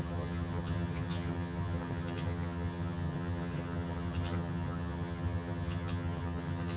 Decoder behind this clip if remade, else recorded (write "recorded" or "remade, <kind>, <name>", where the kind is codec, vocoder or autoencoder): remade, vocoder, HiFi-GAN